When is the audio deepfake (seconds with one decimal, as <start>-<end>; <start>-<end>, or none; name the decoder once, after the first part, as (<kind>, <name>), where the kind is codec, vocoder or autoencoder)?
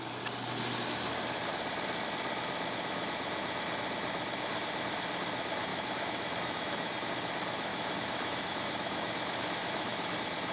5.7-7.1 (autoencoder, DAC-VAE); 7.7-10.1